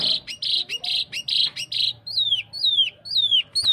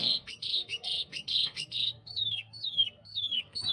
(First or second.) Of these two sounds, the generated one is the second